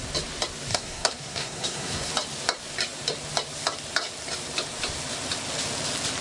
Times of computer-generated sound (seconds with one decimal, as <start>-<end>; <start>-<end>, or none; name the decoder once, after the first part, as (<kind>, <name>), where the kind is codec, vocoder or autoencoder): 0.7-2.1 (codec, SNAC)